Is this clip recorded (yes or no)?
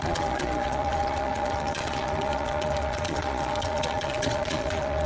no